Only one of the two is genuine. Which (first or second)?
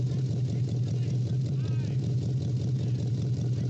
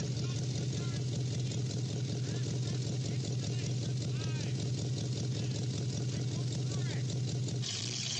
second